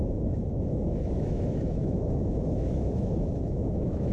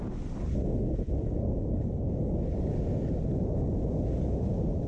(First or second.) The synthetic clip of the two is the first